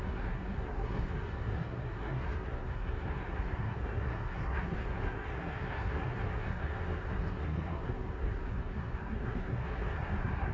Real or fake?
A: fake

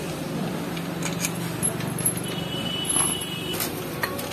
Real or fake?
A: real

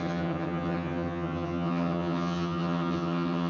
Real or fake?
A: fake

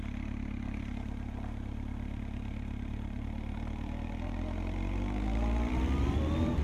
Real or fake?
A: fake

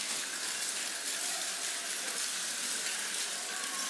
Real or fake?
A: real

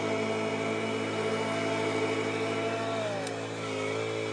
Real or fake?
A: real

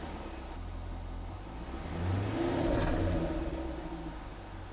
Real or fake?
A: real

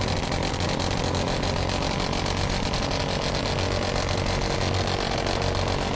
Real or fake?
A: real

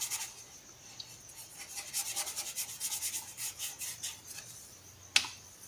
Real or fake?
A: real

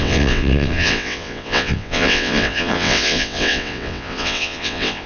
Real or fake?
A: fake